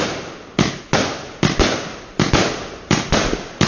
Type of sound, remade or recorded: recorded